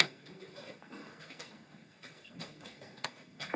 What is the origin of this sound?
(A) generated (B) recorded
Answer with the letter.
A